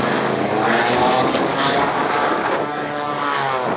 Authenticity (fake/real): fake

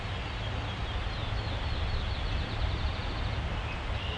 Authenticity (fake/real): real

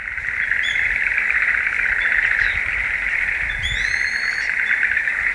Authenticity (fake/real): real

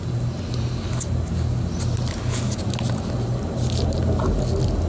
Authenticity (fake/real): real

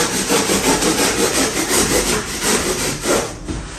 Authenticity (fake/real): fake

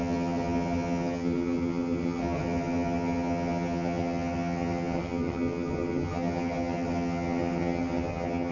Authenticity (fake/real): fake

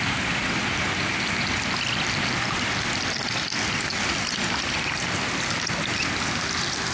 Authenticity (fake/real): real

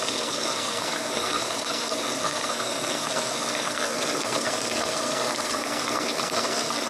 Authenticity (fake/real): fake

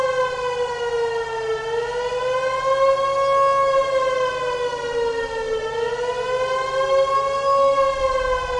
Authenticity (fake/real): real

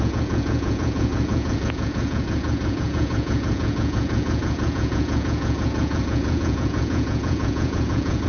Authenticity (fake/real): fake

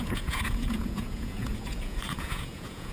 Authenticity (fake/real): fake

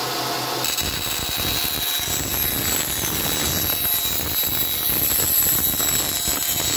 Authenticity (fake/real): real